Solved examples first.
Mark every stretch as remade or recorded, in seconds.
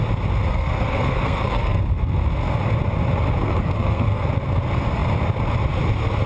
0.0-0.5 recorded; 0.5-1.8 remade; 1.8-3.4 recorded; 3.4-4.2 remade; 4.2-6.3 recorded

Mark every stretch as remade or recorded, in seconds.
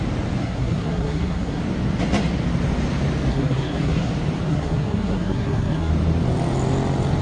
0.0-0.4 recorded; 0.4-1.6 remade; 1.6-3.3 recorded; 3.3-4.1 remade; 4.1-4.5 recorded; 4.5-5.9 remade; 5.9-7.2 recorded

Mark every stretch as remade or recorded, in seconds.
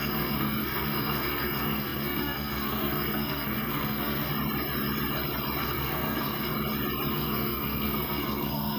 0.0-4.3 remade; 4.3-5.6 recorded; 5.6-6.5 remade; 6.5-7.1 recorded; 7.1-8.8 remade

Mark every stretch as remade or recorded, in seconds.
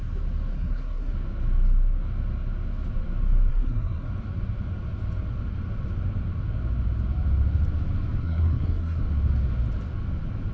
0.0-0.5 recorded; 0.5-1.1 remade; 1.1-3.5 recorded; 3.5-4.1 remade; 4.1-8.2 recorded; 8.2-9.0 remade; 9.0-10.5 recorded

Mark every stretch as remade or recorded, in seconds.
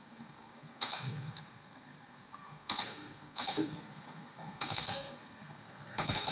0.0-6.3 remade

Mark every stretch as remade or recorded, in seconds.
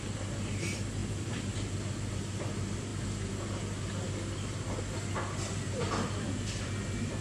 0.0-7.2 recorded